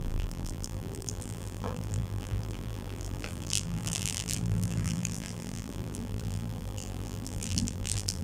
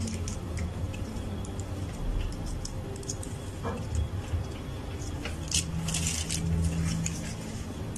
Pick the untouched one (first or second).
second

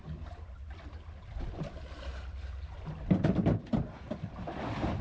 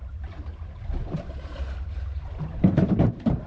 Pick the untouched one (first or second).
first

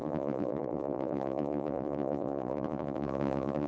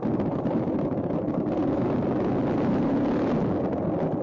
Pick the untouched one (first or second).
second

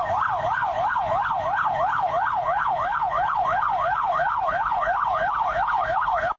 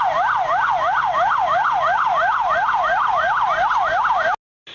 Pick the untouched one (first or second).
second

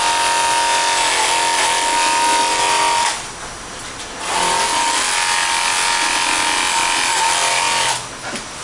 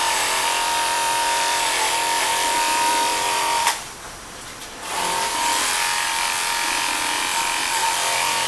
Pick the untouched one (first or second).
first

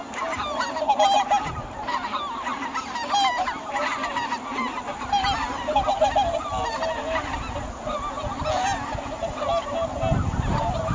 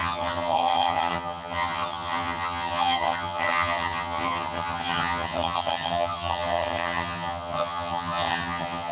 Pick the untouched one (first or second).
first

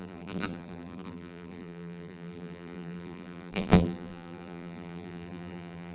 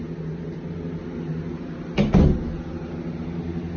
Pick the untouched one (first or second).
second